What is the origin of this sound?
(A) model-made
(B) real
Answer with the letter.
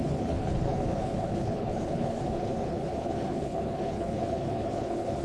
A